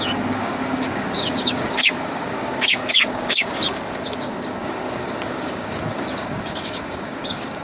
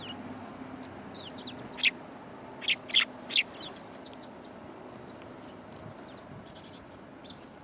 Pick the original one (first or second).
second